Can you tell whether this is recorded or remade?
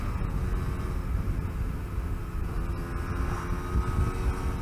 recorded